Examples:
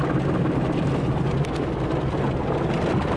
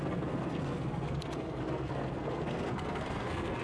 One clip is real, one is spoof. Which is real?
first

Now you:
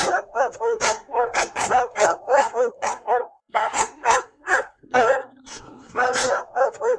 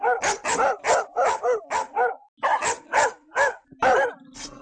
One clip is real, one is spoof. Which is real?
second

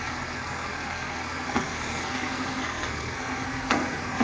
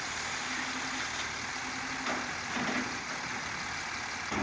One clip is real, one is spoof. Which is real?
second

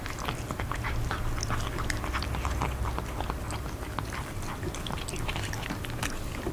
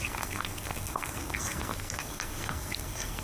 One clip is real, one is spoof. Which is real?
first